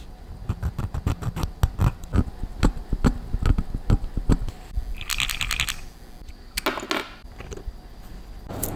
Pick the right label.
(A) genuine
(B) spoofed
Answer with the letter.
A